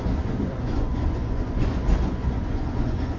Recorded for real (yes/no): no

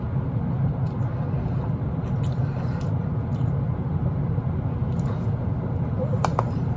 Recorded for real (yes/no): yes